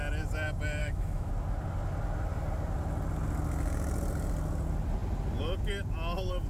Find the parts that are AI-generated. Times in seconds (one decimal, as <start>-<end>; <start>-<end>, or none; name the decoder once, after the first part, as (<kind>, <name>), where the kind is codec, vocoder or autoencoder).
0.8-1.3 (autoencoder, DAC-VAE)